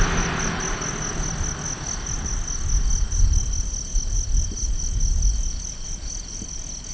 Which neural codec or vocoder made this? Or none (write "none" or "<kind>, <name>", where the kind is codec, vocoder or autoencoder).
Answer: none